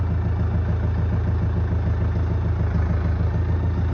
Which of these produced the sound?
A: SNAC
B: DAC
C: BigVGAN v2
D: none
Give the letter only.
D